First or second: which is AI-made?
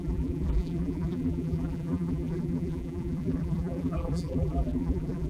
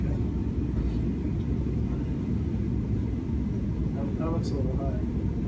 first